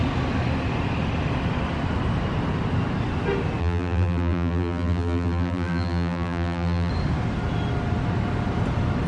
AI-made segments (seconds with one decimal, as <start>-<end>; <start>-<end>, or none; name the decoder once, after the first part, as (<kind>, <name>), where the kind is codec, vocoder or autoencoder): 3.6-6.9 (vocoder, BigVGAN v2)